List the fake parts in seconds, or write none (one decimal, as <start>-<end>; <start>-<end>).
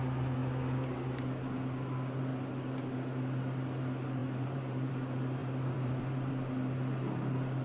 4.2-4.9; 5.4-6.3